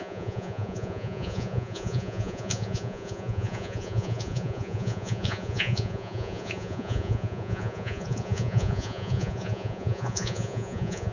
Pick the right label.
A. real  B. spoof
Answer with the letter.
B